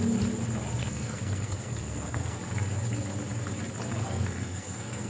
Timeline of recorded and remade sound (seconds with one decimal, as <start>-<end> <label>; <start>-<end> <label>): 0.0-0.8 recorded; 0.8-2.4 remade; 2.4-4.0 recorded; 4.0-5.1 remade